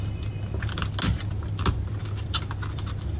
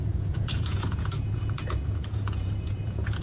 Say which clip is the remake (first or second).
second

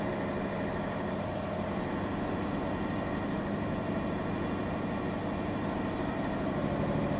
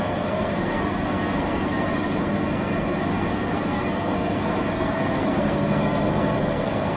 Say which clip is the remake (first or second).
second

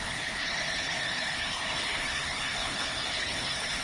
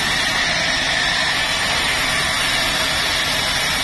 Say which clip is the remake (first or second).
first